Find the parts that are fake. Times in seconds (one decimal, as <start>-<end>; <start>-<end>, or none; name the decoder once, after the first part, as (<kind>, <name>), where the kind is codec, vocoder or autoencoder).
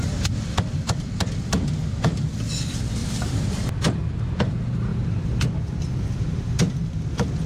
3.0-3.8 (vocoder, BigVGAN v2); 4.9-5.9